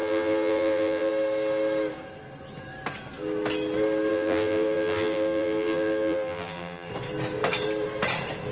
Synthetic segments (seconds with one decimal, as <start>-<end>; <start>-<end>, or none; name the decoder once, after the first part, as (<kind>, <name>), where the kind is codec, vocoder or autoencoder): 0.0-1.1 (vocoder, BigVGAN v2); 4.1-6.9